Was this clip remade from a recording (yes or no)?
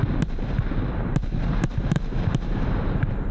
yes